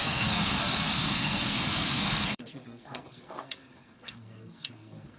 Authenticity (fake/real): fake